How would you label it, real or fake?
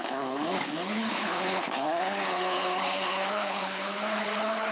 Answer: fake